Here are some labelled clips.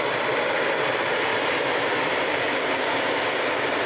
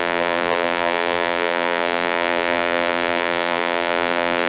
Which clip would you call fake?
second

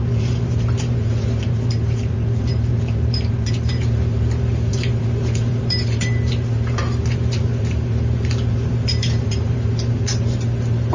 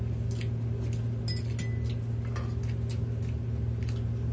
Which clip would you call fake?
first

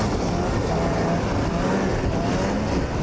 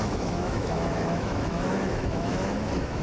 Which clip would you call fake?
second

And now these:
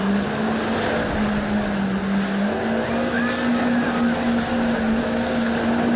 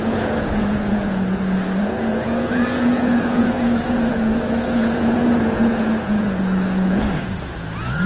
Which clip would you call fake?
second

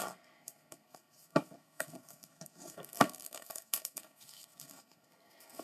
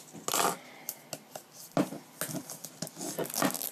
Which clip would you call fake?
first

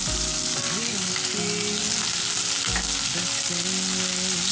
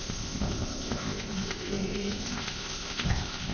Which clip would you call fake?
second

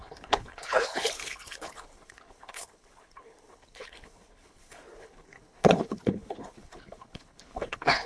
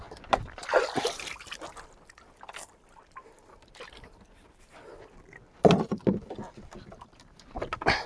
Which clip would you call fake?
first